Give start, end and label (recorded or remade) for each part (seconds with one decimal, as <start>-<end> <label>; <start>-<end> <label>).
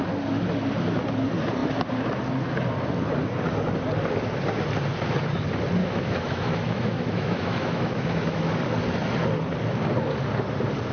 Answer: 0.0-5.8 recorded; 5.8-8.5 remade; 8.5-10.9 recorded